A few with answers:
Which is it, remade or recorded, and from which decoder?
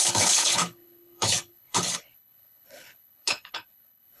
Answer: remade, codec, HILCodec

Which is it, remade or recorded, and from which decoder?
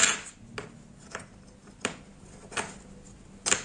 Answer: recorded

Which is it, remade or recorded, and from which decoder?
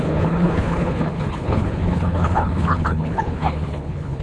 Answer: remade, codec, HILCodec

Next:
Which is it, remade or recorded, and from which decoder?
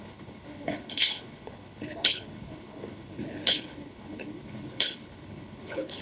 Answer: remade, codec, HILCodec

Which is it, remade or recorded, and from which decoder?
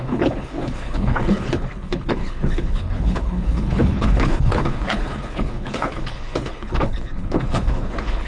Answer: remade, codec, HILCodec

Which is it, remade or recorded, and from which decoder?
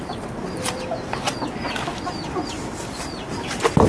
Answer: recorded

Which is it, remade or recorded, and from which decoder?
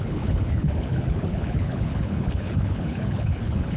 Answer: remade, codec, HILCodec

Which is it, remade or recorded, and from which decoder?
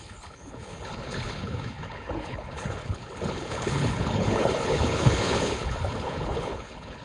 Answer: remade, codec, HILCodec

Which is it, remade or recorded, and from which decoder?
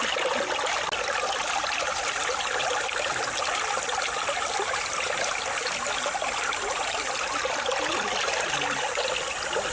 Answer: recorded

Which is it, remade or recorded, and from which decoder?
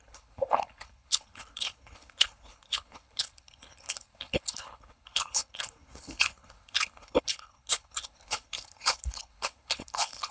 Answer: remade, codec, HILCodec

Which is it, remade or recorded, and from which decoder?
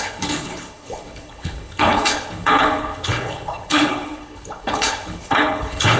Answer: remade, codec, HILCodec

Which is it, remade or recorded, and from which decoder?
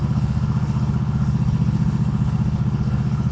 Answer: remade, codec, HILCodec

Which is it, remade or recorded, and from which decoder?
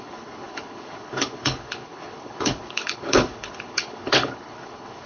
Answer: remade, codec, HILCodec